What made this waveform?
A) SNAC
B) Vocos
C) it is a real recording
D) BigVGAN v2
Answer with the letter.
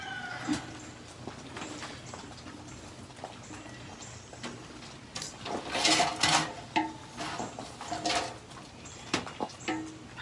C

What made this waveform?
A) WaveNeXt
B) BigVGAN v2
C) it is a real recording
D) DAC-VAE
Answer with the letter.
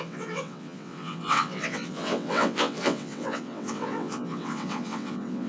A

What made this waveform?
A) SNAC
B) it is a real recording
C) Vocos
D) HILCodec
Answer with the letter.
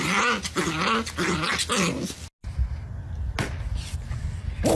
B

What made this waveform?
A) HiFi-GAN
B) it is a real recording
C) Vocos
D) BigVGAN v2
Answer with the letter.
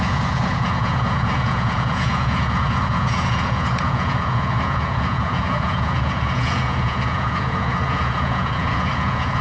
C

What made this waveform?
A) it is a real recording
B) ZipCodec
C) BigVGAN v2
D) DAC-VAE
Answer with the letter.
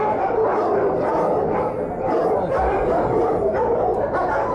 C